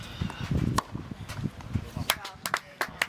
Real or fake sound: real